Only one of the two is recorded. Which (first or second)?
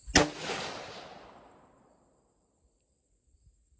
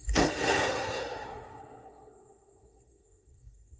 first